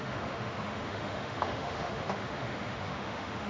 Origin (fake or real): fake